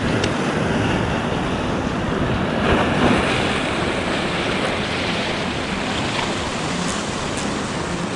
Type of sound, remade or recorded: recorded